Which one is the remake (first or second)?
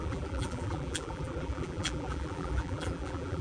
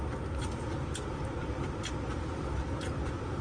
first